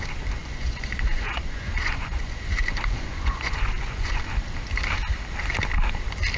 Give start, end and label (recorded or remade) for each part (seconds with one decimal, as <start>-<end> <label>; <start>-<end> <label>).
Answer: 0.0-0.4 recorded; 0.4-4.2 remade; 4.2-6.4 recorded